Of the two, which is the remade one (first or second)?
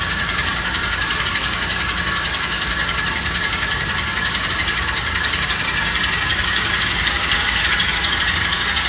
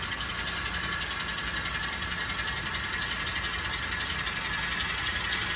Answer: first